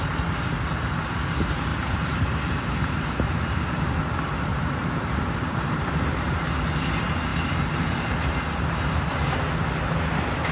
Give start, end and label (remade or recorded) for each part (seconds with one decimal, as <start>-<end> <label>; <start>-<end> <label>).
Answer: 0.0-1.7 recorded; 1.7-4.0 remade; 4.0-4.5 recorded; 4.5-6.3 remade; 6.3-10.5 recorded